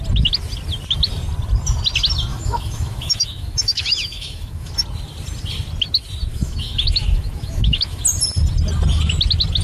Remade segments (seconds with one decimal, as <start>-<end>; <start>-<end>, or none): 2.3-4.7; 6.3-8.0